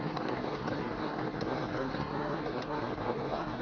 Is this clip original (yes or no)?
no